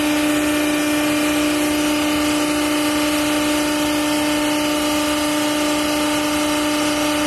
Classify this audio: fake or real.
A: real